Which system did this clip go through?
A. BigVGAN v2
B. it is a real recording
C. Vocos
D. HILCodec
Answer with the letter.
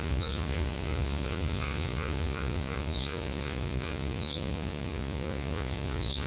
C